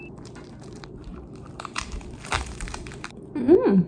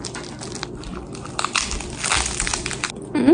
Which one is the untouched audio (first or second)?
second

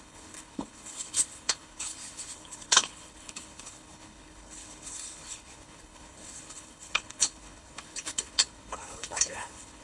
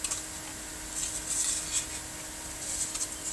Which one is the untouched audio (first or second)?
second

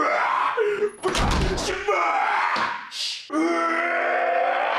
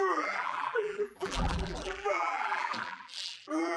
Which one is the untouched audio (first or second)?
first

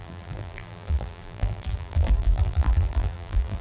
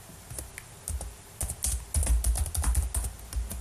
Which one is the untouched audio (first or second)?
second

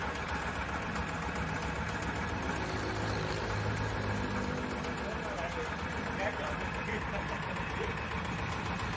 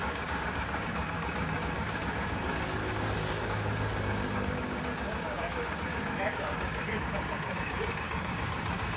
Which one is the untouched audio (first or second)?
first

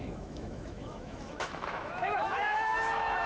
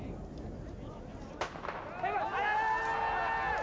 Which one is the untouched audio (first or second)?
second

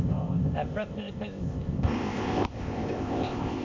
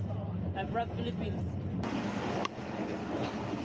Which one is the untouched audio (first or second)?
second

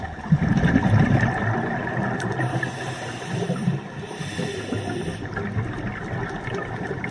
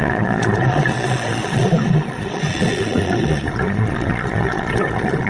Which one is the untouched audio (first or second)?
first